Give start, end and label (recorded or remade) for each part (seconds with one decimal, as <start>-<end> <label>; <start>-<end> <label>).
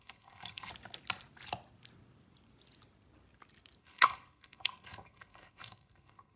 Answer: 0.0-0.7 remade; 0.7-3.8 recorded; 3.8-6.4 remade